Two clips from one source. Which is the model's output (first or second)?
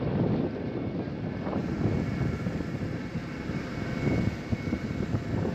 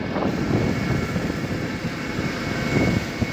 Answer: first